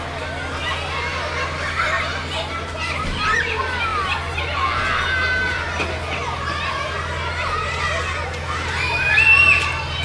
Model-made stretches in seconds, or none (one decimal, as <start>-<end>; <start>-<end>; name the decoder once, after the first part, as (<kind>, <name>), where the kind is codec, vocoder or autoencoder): none